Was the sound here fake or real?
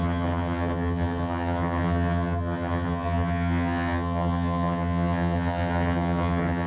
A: fake